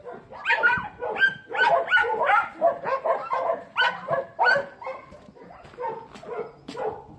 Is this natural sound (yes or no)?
yes